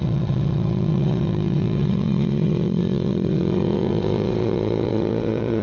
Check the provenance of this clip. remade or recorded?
remade